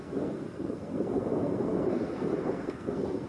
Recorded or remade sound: remade